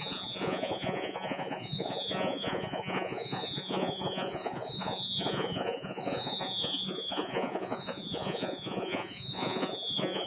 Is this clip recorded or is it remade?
remade